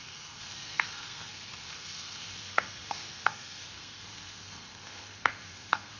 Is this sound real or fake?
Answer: fake